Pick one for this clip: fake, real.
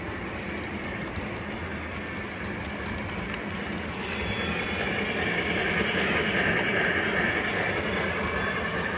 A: real